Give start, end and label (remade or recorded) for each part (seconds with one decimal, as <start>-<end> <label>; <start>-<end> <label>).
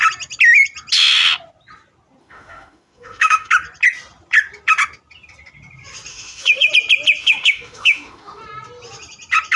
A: 0.0-2.2 recorded; 2.2-3.5 remade; 3.5-6.1 recorded; 6.1-6.7 remade; 6.7-7.2 recorded; 7.2-8.4 remade; 8.4-9.6 recorded